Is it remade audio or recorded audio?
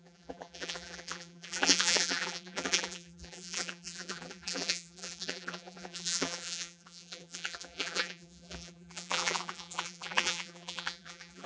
remade